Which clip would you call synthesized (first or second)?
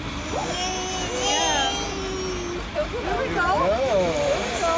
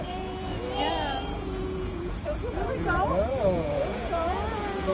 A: second